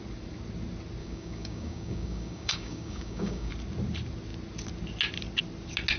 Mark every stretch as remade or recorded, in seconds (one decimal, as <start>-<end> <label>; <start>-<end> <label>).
0.0-1.0 recorded; 1.0-3.5 remade; 3.5-6.0 recorded